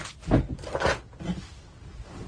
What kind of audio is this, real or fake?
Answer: real